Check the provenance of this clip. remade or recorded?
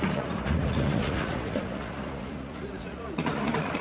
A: remade